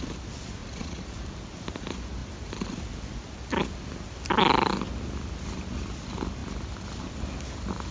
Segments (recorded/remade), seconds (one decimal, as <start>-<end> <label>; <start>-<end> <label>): 0.0-0.6 recorded; 0.6-1.2 remade; 1.2-7.9 recorded